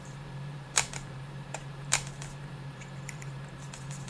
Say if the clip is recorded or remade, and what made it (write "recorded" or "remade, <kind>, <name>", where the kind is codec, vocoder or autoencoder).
remade, vocoder, BigVGAN v2